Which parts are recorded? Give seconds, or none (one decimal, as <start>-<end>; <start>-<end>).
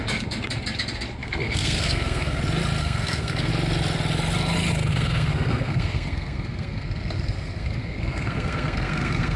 0.0-1.2; 2.4-2.8; 3.5-4.9